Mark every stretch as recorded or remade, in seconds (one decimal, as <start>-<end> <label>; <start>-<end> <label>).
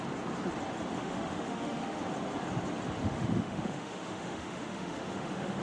0.0-1.0 recorded; 1.0-2.0 remade; 2.0-3.0 recorded; 3.0-5.6 remade